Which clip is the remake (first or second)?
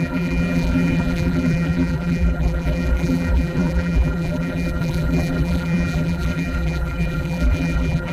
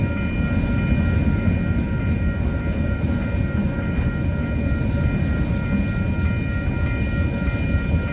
first